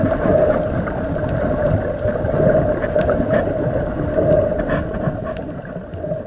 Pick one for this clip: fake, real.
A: real